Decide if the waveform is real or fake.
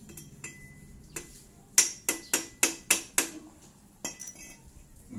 real